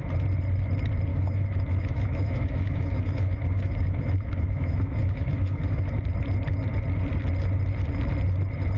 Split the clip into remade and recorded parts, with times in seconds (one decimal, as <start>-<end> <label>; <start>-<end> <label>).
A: 0.0-1.1 recorded; 1.1-6.0 remade; 6.0-8.8 recorded